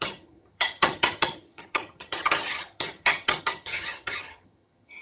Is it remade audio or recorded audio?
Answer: remade